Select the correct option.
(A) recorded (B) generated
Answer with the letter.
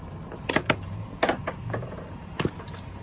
A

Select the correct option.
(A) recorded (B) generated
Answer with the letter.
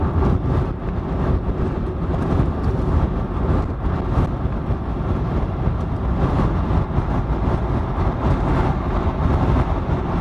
A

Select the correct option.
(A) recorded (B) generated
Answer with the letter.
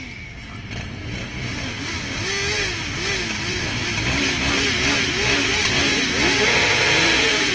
A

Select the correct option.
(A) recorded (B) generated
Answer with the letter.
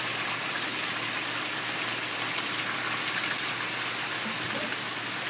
A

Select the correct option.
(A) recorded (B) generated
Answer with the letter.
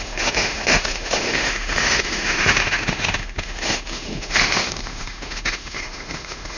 B